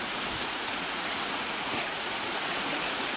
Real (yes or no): no